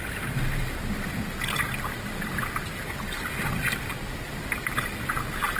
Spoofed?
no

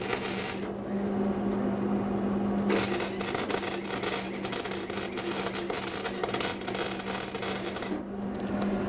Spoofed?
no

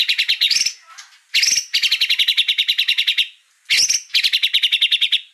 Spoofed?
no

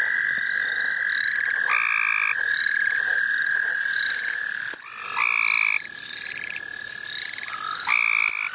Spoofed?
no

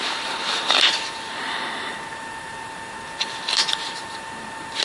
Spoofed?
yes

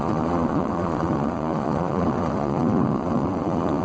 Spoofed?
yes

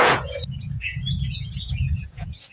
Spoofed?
yes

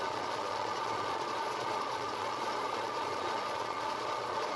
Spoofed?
yes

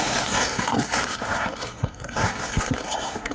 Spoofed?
yes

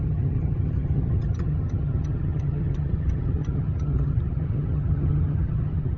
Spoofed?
yes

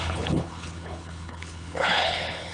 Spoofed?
yes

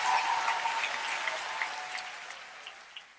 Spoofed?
no